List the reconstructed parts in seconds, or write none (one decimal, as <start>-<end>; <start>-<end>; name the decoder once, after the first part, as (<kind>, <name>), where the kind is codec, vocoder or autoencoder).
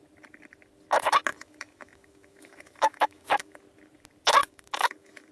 1.3-3.6 (autoencoder, DAC-VAE); 4.4-5.3